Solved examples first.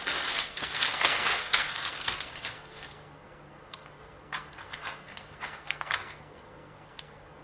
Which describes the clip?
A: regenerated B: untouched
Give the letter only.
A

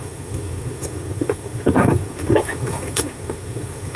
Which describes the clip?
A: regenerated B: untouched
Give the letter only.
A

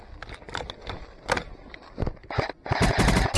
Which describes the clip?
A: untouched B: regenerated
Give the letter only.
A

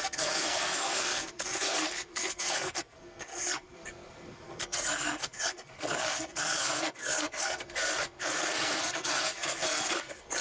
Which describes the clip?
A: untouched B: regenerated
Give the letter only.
B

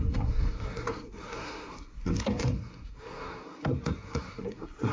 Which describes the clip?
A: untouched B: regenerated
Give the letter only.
B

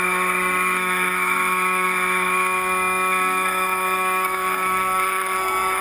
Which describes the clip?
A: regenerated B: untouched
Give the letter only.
A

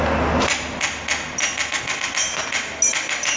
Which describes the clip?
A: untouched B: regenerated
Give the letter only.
A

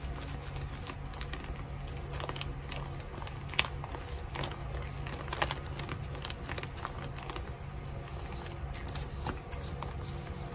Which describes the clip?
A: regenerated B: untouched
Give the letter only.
B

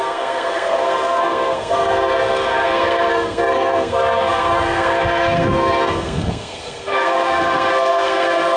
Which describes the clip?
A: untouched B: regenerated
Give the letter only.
B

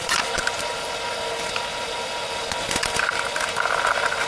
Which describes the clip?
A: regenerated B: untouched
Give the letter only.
B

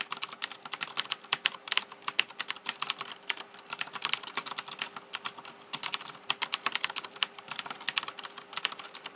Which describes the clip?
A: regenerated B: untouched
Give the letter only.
B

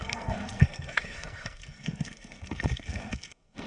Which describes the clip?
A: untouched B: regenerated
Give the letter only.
B